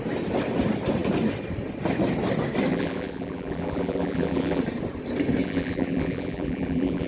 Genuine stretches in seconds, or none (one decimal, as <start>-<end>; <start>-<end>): 0.0-2.7; 4.6-5.4